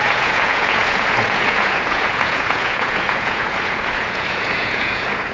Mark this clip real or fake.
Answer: fake